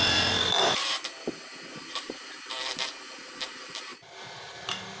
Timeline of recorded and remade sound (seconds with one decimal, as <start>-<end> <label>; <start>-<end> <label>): 0.0-0.8 remade; 0.8-1.9 recorded; 1.9-3.9 remade; 3.9-5.0 recorded